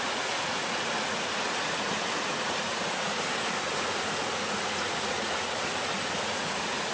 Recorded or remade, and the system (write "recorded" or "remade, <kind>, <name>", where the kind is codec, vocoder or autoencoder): remade, vocoder, Vocos